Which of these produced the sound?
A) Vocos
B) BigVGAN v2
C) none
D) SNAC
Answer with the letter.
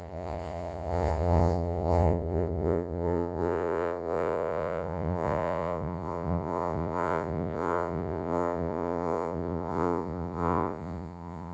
A